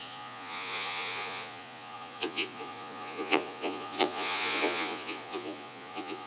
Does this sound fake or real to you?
fake